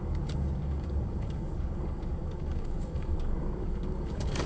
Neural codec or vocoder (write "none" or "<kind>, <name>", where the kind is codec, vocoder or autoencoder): codec, DAC